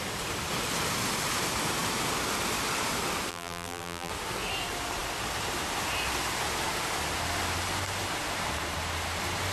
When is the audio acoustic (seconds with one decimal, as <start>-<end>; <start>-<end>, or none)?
0.0-3.3; 4.1-9.5